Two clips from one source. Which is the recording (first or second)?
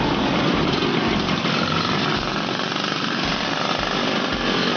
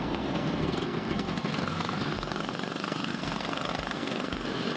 first